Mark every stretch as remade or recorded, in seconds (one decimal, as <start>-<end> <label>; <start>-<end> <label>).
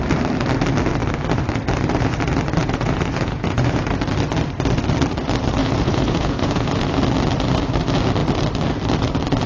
0.0-2.6 recorded; 2.6-4.0 remade; 4.0-5.6 recorded; 5.6-6.9 remade; 6.9-9.5 recorded